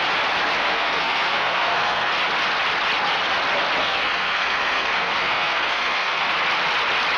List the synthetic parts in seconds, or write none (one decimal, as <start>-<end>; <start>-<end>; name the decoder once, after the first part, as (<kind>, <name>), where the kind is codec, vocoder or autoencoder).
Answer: 0.6-2.1 (codec, SNAC); 3.8-6.3